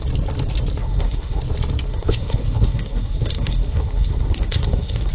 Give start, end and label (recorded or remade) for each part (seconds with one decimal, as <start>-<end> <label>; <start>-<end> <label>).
0.0-0.8 recorded; 0.8-1.4 remade; 1.4-1.9 recorded; 1.9-5.1 remade